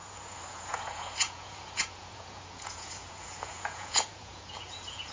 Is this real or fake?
fake